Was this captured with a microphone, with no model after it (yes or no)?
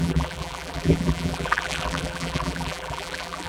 no